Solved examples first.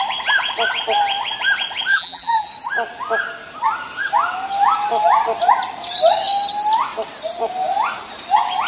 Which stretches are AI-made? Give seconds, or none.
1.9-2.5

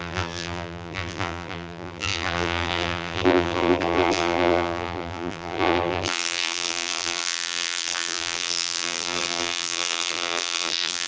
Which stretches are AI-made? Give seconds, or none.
0.0-11.1

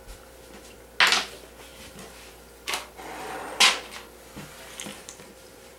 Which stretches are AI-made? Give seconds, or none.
4.9-5.8